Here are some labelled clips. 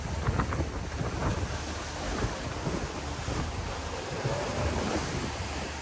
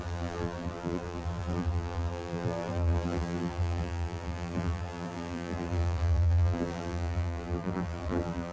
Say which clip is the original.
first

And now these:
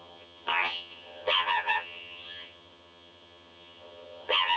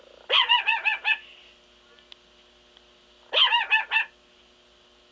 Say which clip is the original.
second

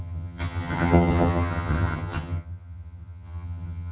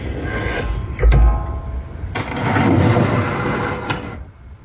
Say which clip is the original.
second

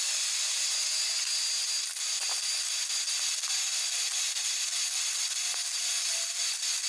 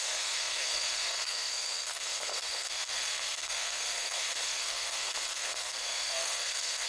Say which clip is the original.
first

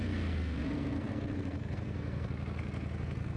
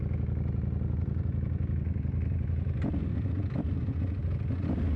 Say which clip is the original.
second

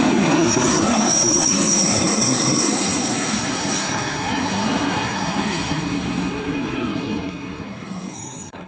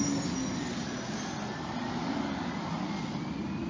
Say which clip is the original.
second